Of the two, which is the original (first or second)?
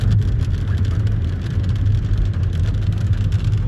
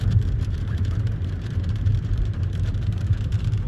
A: first